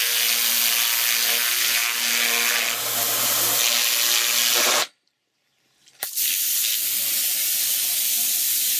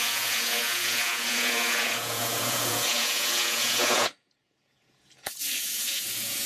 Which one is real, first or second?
first